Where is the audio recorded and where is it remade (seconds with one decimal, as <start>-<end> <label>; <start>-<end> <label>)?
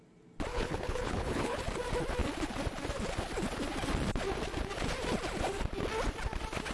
0.0-0.5 recorded; 0.5-1.6 remade; 1.6-6.7 recorded